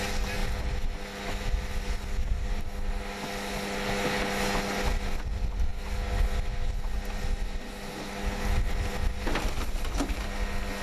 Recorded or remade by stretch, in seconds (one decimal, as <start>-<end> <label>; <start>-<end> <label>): 0.0-10.8 recorded